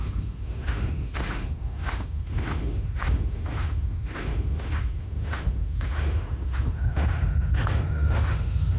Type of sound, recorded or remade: remade